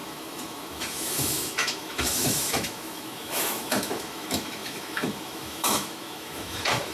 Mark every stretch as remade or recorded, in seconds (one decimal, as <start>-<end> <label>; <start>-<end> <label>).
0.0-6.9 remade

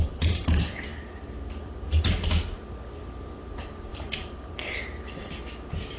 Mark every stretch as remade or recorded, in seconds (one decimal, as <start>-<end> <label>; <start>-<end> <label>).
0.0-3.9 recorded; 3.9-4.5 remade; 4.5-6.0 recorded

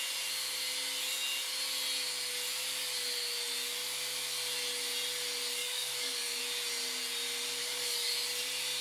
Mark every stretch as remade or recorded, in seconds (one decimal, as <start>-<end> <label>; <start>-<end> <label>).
0.0-5.6 recorded; 5.6-6.4 remade; 6.4-7.6 recorded; 7.6-8.1 remade; 8.1-8.8 recorded